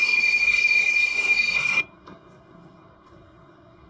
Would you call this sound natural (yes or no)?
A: no